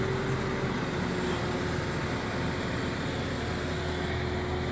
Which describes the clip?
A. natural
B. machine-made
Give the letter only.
A